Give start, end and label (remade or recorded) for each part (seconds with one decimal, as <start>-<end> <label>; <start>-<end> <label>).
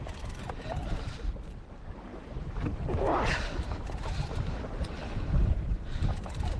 0.0-2.1 recorded; 2.1-6.1 remade; 6.1-6.6 recorded